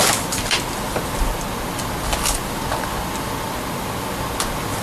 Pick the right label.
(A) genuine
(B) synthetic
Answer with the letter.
A